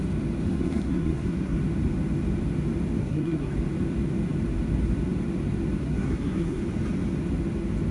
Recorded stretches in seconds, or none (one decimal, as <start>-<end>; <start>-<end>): 0.0-0.5; 1.6-3.0; 3.5-5.8; 6.6-7.9